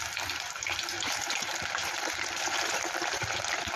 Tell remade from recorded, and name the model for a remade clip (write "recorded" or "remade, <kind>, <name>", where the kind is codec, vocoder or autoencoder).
remade, vocoder, BigVGAN v2